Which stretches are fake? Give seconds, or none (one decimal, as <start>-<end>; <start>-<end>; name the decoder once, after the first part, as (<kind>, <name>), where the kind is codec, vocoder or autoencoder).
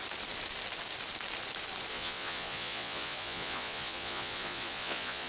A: 1.9-5.3 (vocoder, Vocos)